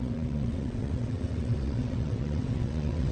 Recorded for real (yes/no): no